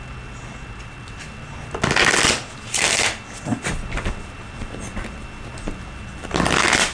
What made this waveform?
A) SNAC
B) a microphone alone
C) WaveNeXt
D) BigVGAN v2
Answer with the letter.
B